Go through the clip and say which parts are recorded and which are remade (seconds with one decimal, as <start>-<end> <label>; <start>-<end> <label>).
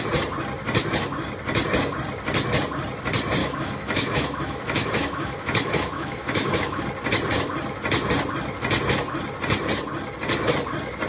0.0-3.4 recorded; 3.4-6.8 remade; 6.8-11.1 recorded